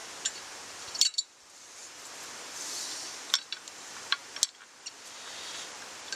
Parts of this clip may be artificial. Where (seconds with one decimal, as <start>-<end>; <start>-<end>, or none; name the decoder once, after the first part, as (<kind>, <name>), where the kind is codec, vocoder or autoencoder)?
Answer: 0.8-4.2 (vocoder, BigVGAN v2); 4.8-6.2